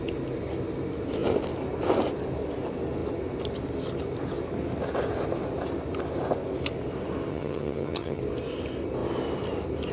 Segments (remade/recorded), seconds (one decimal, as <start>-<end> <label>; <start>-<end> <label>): 0.0-7.3 recorded; 7.3-8.2 remade; 8.2-9.9 recorded